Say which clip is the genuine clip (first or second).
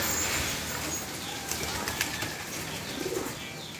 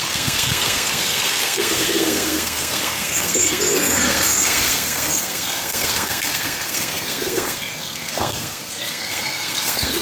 first